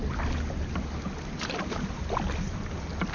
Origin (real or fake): real